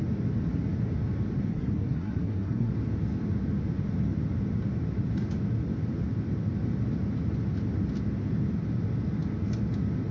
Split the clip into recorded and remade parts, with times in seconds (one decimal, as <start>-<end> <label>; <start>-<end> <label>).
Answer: 0.0-1.5 recorded; 1.5-2.7 remade; 2.7-10.1 recorded